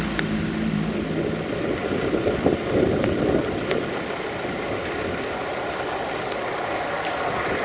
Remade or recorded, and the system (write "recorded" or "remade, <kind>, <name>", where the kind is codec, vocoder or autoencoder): recorded